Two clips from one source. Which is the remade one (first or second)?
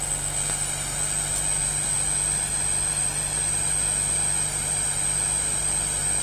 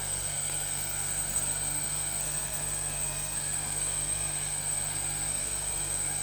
second